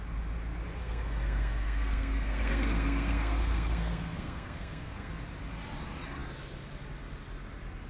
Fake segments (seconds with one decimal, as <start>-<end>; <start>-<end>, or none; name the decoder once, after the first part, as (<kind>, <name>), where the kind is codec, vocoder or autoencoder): 0.8-5.1 (codec, SNAC)